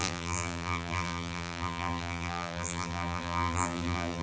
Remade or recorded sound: remade